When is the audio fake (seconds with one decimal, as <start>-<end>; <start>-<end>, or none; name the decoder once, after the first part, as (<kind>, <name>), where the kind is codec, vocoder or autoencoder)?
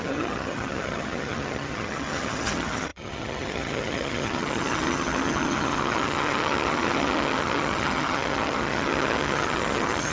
0.0-10.1 (vocoder, HiFi-GAN)